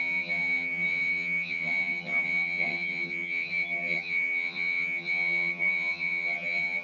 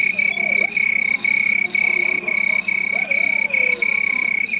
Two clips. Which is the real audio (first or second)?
second